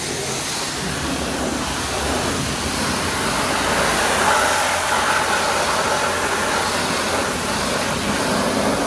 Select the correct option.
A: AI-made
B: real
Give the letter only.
B